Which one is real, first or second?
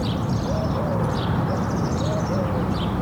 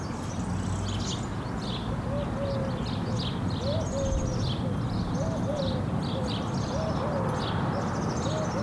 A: second